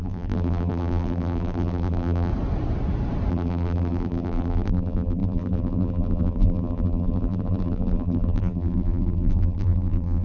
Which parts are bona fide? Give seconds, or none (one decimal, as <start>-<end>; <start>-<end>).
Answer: 2.3-3.3